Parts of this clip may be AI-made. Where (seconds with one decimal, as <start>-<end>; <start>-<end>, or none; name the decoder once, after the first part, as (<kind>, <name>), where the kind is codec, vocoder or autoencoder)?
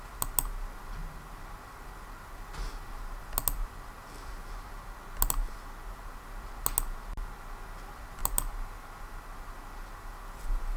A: none